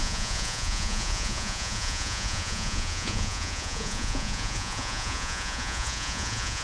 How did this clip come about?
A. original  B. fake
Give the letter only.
B